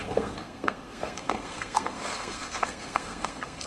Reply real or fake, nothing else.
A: fake